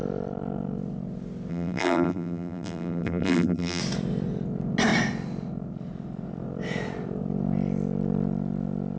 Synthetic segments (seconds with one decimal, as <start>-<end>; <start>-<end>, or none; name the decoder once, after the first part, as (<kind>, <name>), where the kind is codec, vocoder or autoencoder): 1.5-3.8 (vocoder, BigVGAN v2)

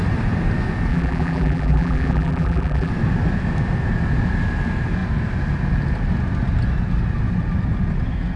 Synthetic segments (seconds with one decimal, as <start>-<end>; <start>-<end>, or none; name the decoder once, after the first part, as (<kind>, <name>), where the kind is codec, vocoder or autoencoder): 0.9-2.9 (vocoder, BigVGAN v2)

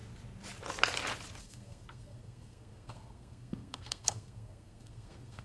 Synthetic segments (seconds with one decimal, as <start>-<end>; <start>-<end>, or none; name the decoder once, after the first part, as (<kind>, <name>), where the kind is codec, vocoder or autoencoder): 1.4-5.4 (codec, SNAC)

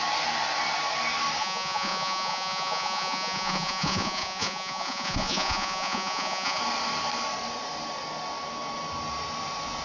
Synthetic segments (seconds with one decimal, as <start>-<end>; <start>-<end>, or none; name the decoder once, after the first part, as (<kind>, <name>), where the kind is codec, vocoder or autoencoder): 1.4-6.6 (vocoder, Vocos)